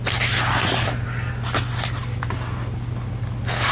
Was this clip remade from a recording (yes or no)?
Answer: no